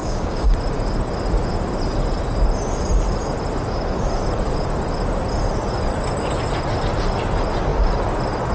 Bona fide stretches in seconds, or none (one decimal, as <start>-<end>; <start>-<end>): 0.5-8.5